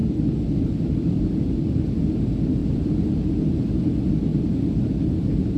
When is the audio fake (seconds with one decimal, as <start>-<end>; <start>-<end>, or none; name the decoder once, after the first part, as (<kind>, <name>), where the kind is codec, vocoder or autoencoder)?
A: 0.0-1.2 (vocoder, BigVGAN v2); 2.6-3.1; 4.3-5.6